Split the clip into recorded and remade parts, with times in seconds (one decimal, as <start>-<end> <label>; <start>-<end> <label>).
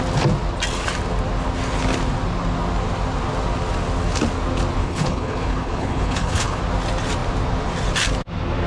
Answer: 0.0-4.8 recorded; 4.8-6.6 remade; 6.6-8.7 recorded